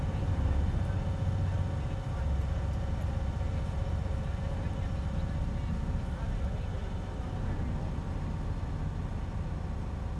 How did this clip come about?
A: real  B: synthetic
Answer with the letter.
A